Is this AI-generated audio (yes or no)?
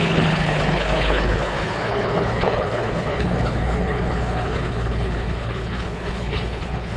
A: yes